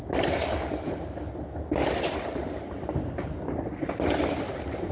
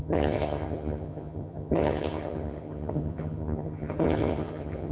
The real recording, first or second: first